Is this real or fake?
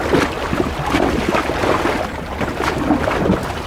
real